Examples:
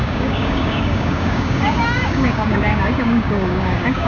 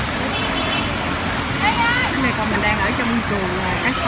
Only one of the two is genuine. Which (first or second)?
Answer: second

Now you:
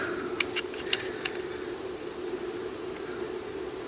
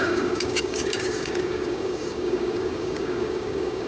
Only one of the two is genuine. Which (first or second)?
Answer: first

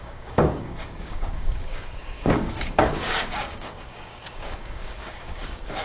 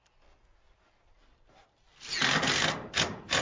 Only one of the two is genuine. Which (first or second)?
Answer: second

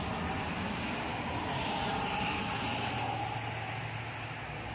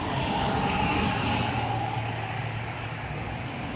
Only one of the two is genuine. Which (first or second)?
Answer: first